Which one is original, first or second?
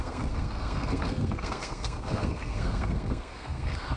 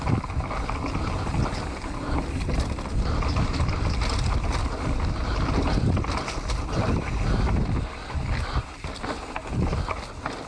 second